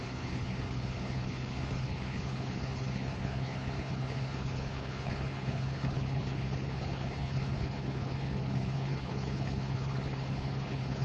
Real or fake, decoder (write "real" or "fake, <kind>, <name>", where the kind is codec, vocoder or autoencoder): fake, codec, HILCodec